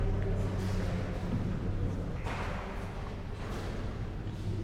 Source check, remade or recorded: recorded